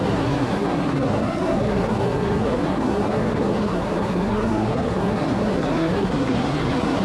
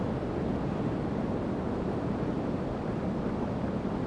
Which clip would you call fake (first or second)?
first